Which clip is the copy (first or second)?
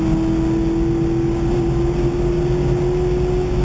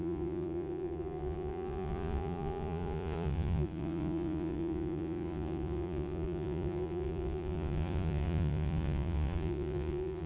second